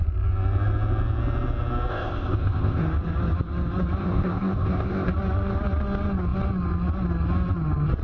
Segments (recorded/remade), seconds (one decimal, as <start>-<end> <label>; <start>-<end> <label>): 0.0-1.9 recorded; 1.9-2.8 remade; 2.8-4.0 recorded; 4.0-5.1 remade; 5.1-8.0 recorded

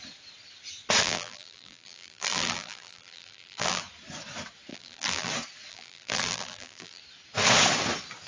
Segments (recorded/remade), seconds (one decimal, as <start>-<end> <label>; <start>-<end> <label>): 0.0-1.0 recorded; 1.0-3.8 remade; 3.8-4.7 recorded; 4.7-5.3 remade; 5.3-5.7 recorded; 5.7-7.0 remade; 7.0-8.3 recorded